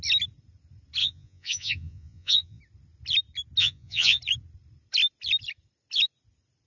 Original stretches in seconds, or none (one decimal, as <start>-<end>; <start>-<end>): 0.0-1.0; 2.6-3.6; 4.2-6.7

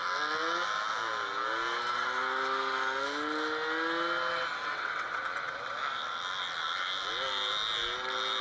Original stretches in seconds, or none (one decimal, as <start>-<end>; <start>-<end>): 0.0-4.7; 5.2-8.4